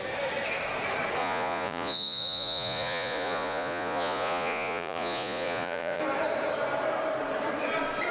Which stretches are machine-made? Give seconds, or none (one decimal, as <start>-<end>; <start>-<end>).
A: 1.2-6.0